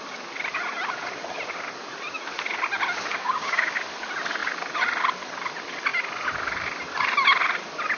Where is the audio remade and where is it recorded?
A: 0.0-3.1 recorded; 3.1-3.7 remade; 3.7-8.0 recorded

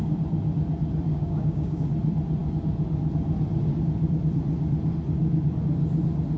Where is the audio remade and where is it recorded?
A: 0.0-1.1 recorded; 1.1-1.8 remade; 1.8-6.4 recorded

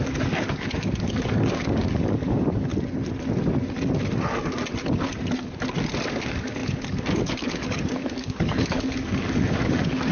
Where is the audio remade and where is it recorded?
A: 0.0-2.7 remade; 2.7-6.1 recorded; 6.1-10.1 remade

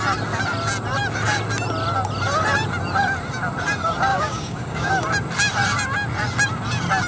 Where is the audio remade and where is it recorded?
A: 0.0-4.1 recorded; 4.1-4.9 remade; 4.9-7.1 recorded